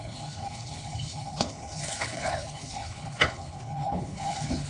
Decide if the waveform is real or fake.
fake